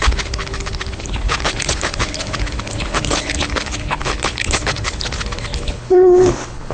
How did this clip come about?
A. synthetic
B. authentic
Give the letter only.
A